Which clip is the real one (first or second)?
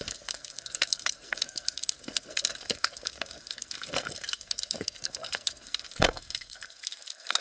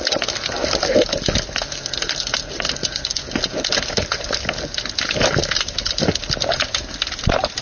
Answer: second